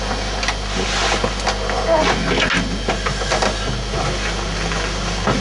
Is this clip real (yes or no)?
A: yes